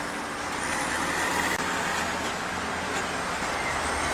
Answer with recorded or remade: recorded